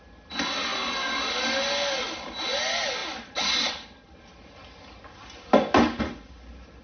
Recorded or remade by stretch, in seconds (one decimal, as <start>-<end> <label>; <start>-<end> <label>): 0.0-6.8 recorded